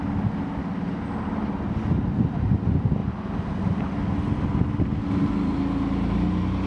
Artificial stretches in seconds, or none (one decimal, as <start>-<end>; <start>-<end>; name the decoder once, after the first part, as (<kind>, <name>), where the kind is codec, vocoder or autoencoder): none